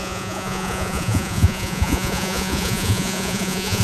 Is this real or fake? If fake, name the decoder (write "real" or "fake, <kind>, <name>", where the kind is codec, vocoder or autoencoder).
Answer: fake, vocoder, Vocos